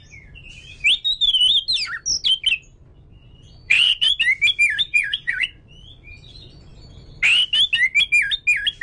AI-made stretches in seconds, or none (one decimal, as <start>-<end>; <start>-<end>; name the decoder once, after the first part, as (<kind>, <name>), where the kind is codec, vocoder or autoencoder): 2.9-4.2 (vocoder, Vocos); 4.9-6.7

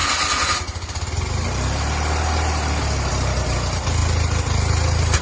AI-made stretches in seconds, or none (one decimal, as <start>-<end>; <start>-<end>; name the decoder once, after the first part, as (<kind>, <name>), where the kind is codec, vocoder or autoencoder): none

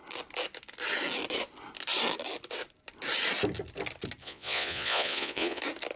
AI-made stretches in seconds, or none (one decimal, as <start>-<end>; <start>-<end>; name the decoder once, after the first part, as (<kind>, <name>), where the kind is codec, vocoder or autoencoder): 4.2-5.6 (vocoder, Vocos)